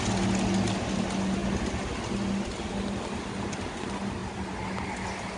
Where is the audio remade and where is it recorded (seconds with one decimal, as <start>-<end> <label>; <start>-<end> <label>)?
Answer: 0.0-5.4 recorded